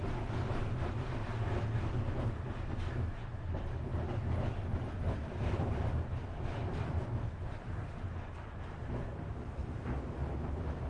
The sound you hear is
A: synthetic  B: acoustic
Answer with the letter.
B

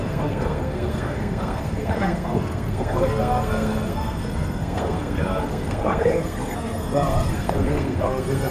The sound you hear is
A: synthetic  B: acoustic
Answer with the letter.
A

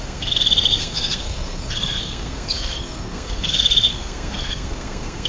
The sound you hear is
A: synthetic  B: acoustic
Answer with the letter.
A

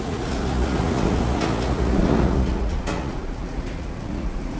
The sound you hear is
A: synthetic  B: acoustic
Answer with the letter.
A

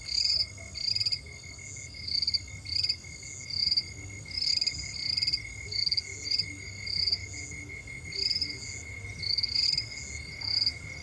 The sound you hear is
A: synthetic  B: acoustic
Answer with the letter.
B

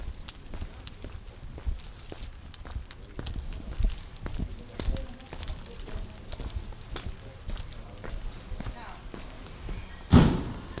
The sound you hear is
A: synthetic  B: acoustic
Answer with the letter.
B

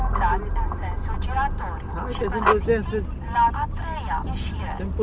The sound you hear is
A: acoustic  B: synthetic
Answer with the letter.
A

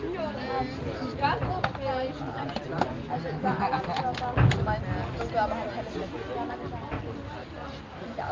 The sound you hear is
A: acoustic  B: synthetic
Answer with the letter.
A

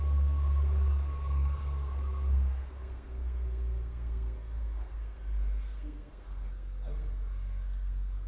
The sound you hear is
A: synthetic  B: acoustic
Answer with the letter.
A